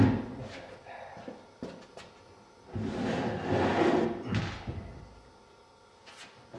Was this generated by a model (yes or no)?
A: no